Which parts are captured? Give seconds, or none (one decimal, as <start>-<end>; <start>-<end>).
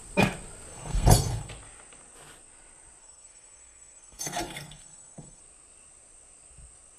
0.0-0.7; 1.5-3.0; 5.4-7.0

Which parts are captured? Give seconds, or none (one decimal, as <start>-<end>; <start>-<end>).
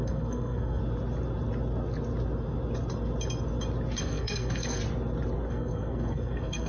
0.8-4.0; 4.8-5.5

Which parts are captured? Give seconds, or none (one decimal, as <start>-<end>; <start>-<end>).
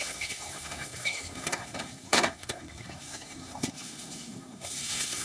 none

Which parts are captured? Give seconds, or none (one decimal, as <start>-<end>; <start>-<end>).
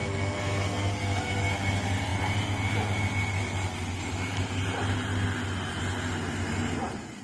1.4-7.2